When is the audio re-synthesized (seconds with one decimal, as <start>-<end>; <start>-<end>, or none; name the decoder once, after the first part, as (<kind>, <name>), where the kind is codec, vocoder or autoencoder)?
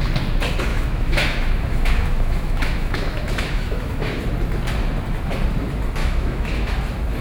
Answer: 0.7-4.2 (autoencoder, DAC-VAE); 6.0-6.7